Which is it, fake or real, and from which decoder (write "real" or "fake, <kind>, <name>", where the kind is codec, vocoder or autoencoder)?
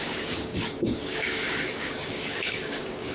fake, codec, DAC